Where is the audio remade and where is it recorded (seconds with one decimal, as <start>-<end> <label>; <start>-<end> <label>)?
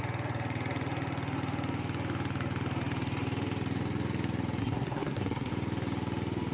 0.0-4.6 recorded; 4.6-5.5 remade; 5.5-6.5 recorded